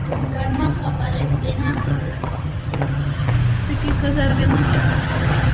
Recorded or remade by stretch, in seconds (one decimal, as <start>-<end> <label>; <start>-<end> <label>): 0.0-3.3 remade; 3.3-4.3 recorded; 4.3-5.5 remade